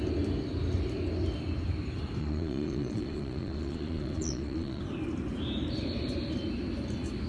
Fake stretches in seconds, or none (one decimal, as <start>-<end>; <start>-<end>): 2.2-4.8